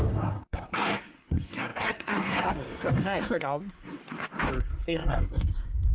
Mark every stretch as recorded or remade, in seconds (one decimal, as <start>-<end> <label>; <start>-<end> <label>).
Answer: 0.0-4.0 remade; 4.0-4.6 recorded; 4.6-5.9 remade